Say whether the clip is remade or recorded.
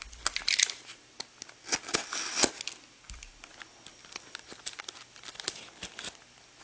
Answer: recorded